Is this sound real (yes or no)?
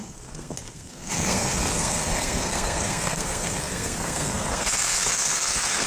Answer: no